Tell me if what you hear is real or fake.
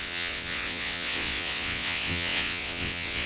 fake